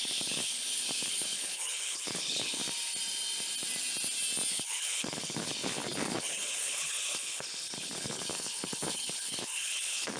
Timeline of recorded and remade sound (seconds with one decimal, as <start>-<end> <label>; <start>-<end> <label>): 0.0-2.6 remade; 2.6-4.5 recorded; 4.5-10.2 remade